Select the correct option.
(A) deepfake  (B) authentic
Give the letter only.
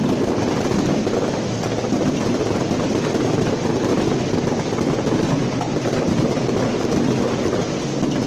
B